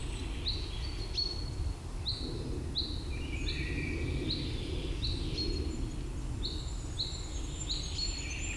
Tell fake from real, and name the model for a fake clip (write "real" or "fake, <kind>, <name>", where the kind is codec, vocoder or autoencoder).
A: real